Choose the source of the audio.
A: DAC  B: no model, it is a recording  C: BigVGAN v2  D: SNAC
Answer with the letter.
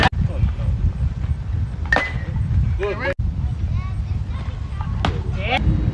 B